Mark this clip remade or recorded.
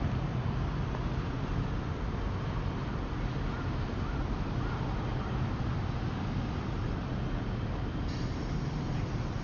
recorded